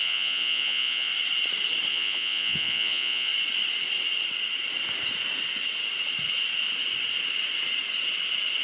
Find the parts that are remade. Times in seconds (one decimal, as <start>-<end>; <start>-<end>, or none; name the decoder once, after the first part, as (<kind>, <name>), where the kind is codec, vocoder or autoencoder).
0.0-1.1 (vocoder, Vocos); 1.9-3.3